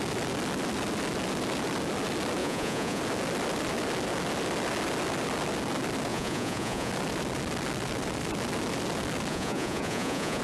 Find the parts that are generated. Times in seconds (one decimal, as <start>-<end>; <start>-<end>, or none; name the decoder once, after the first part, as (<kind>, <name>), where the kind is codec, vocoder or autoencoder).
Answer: 2.4-3.0 (vocoder, Vocos); 6.1-6.9; 9.3-10.4